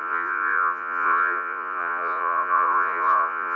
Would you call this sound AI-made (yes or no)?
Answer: yes